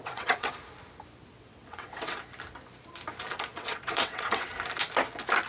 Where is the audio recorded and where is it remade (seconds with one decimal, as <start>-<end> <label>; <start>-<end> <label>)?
0.0-0.5 remade; 0.5-1.3 recorded; 1.3-2.2 remade; 2.2-3.5 recorded; 3.5-4.5 remade; 4.5-5.5 recorded